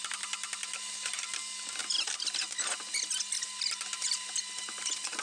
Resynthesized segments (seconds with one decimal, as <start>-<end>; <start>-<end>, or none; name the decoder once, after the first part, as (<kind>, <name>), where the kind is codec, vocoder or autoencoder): none